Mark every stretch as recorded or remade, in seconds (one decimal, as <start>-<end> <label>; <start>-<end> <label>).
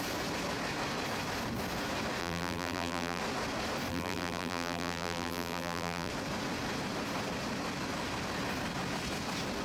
0.0-2.2 recorded; 2.2-3.2 remade; 3.2-3.9 recorded; 3.9-6.1 remade; 6.1-9.6 recorded